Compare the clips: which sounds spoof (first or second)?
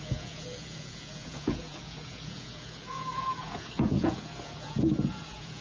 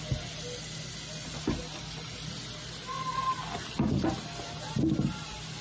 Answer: first